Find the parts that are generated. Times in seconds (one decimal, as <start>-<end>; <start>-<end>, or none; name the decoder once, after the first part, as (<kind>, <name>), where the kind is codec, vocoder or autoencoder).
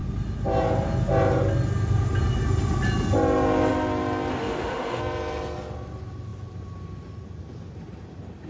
4.3-5.0 (autoencoder, DAC-VAE)